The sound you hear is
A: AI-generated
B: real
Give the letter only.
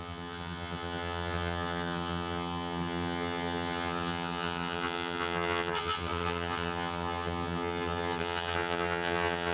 A